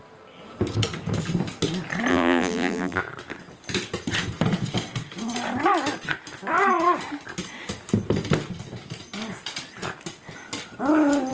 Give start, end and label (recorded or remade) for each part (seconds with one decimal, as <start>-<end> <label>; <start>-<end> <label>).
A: 0.0-2.1 recorded; 2.1-3.0 remade; 3.0-11.3 recorded